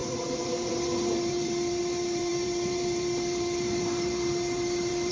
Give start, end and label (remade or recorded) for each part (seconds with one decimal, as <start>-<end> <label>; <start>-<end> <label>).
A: 0.0-5.1 remade